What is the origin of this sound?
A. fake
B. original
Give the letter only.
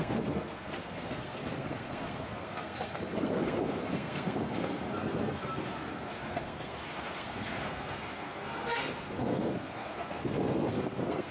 A